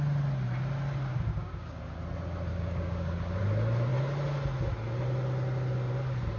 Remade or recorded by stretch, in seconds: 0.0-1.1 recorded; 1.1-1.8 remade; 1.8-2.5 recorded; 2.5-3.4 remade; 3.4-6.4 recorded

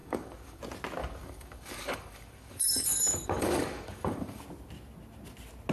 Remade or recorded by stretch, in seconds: 0.0-0.6 remade; 0.6-1.0 recorded; 1.0-4.4 remade; 4.4-5.7 recorded

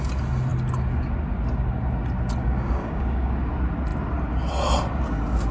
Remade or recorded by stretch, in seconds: 0.0-2.4 recorded; 2.4-3.3 remade; 3.3-5.5 recorded

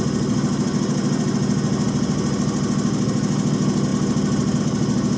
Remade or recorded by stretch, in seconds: 0.0-5.2 recorded

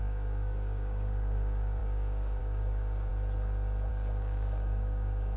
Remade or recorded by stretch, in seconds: 0.0-3.1 remade; 3.1-3.9 recorded; 3.9-5.4 remade

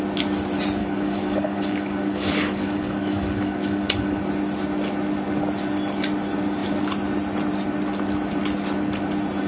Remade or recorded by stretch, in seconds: 0.0-0.8 recorded; 0.8-4.2 remade; 4.2-9.5 recorded